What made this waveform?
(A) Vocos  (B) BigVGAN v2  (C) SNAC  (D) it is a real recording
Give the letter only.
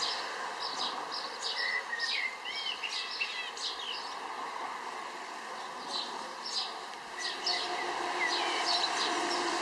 D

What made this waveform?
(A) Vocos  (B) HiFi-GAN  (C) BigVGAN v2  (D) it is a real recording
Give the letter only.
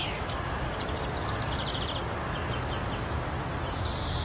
C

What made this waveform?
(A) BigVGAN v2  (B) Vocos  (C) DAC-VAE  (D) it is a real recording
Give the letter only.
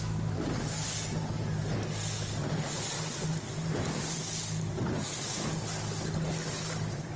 D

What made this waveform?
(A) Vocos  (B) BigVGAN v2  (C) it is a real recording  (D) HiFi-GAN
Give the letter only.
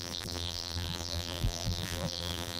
B